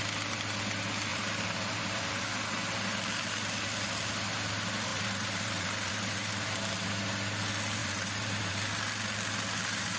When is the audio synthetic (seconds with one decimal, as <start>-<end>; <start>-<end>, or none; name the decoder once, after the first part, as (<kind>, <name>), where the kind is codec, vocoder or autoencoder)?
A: 1.1-2.2 (vocoder, BigVGAN v2); 4.9-6.3; 7.8-8.7

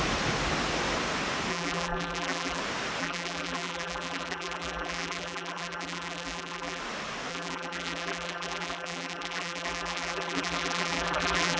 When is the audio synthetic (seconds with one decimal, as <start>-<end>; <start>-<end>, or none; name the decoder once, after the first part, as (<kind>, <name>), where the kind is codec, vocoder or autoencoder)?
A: 1.5-2.6 (vocoder, BigVGAN v2); 3.0-6.8; 7.3-11.6